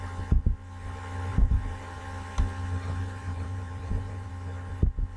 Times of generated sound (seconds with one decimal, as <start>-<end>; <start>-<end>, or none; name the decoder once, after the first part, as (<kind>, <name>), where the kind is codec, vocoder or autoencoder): 1.3-2.0 (vocoder, BigVGAN v2); 3.0-4.3